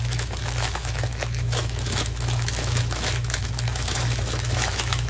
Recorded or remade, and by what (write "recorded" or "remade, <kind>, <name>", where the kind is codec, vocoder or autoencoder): remade, autoencoder, DAC-VAE